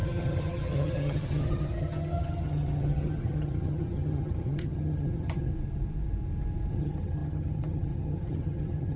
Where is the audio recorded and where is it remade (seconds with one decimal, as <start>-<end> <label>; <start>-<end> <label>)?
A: 0.0-5.5 remade; 5.5-6.7 recorded; 6.7-9.0 remade